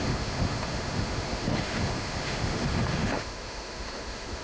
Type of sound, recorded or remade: remade